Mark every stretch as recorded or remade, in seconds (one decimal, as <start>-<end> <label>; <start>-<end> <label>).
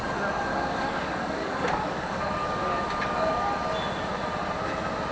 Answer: 0.0-0.5 recorded; 0.5-3.6 remade; 3.6-5.1 recorded